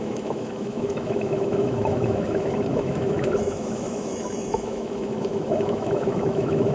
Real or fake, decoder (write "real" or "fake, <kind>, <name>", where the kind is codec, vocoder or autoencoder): fake, autoencoder, DAC-VAE